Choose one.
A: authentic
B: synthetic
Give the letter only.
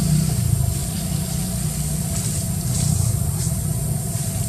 A